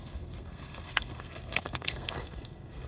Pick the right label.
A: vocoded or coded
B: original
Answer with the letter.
A